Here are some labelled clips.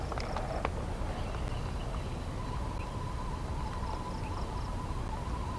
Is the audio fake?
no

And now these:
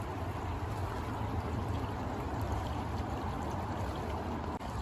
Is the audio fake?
no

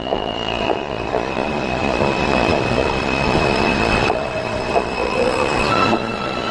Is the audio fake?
yes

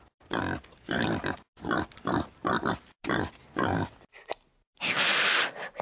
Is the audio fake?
no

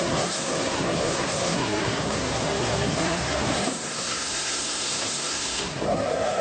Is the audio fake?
yes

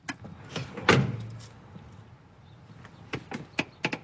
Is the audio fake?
no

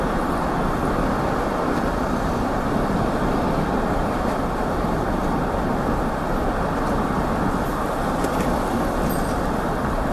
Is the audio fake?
yes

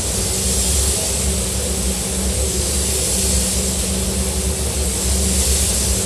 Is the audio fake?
no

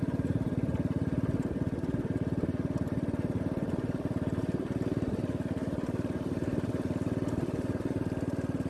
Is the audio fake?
no